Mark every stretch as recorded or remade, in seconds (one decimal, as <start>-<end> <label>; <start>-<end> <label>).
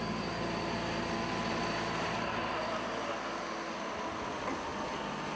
0.0-5.4 recorded